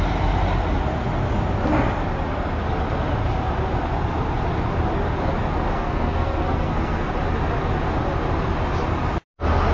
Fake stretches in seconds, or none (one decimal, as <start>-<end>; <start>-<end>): 5.7-7.1